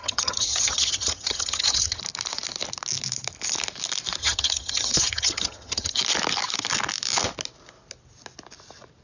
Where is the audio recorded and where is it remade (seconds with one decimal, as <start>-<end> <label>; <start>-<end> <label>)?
0.0-2.0 remade; 2.0-4.2 recorded; 4.2-6.0 remade; 6.0-9.0 recorded